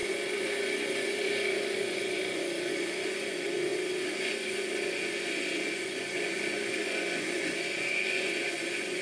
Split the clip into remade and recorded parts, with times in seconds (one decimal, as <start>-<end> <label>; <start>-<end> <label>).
0.0-3.7 remade; 3.7-4.2 recorded; 4.2-9.0 remade